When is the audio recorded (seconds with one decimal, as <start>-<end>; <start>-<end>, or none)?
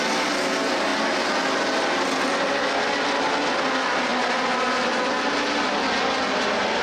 0.0-6.8